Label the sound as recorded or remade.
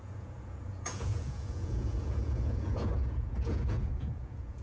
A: remade